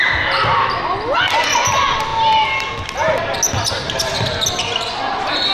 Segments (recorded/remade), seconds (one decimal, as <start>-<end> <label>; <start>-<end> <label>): 0.0-5.5 recorded